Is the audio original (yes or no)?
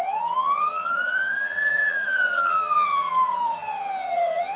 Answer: no